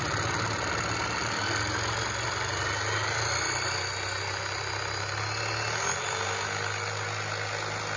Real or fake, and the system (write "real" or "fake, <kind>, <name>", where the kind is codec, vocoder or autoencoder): real